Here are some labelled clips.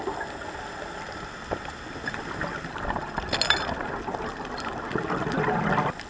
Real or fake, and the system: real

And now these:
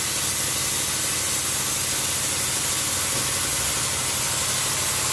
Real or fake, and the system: real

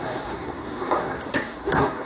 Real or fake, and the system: fake, codec, SNAC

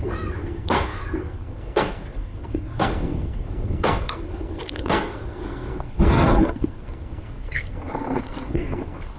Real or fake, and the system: fake, codec, SNAC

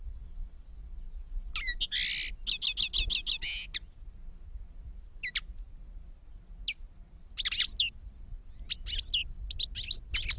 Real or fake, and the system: real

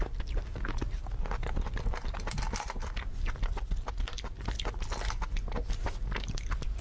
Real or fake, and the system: real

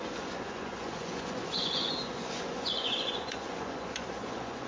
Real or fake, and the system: fake, vocoder, Vocos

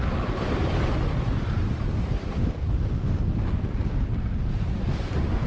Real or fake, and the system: fake, vocoder, BigVGAN v2